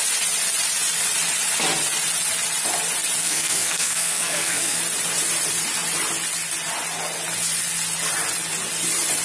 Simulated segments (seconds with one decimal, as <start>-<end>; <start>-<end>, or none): 3.2-4.8